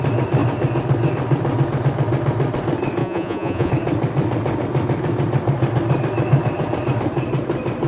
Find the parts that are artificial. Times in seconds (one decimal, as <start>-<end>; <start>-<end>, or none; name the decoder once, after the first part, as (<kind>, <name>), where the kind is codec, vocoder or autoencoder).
3.0-3.7 (vocoder, Vocos)